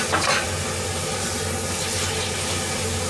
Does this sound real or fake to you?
real